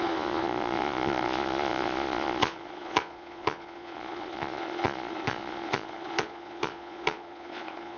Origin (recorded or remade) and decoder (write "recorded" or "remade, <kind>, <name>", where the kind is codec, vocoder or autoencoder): remade, vocoder, Vocos